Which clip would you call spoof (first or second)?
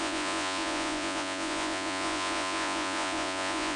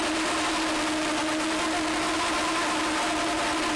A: first